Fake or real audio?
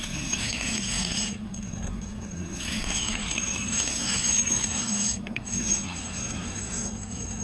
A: fake